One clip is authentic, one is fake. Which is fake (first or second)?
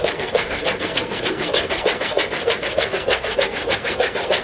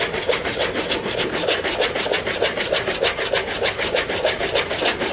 first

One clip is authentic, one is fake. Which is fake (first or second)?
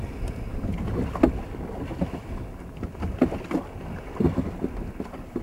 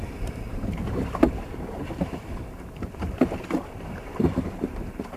second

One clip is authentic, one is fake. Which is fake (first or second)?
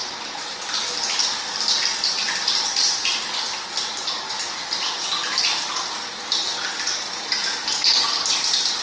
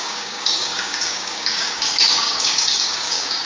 second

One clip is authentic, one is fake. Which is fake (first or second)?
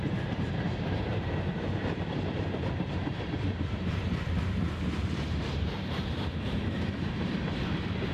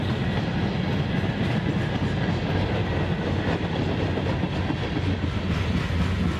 first